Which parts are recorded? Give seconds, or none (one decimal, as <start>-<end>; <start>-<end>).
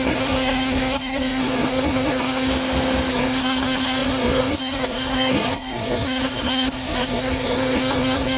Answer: 2.5-3.1